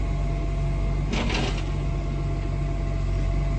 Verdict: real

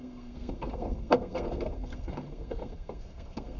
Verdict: fake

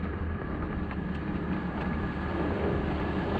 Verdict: fake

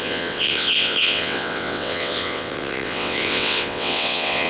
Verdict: fake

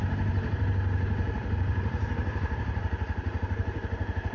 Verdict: fake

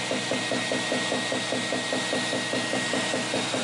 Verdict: real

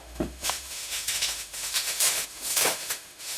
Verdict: fake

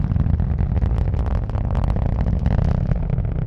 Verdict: real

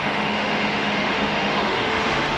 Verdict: fake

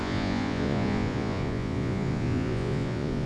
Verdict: fake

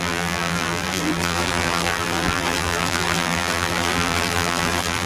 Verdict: fake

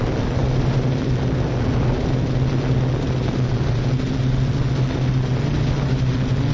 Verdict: real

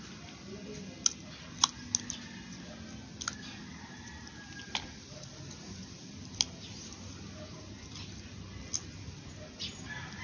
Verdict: real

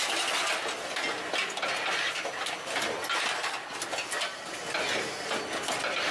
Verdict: real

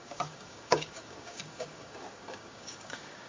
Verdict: fake